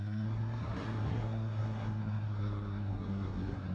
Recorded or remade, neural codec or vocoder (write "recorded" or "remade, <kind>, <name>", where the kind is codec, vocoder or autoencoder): remade, codec, SNAC